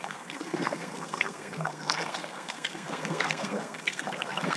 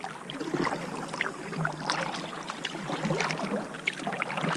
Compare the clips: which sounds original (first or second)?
second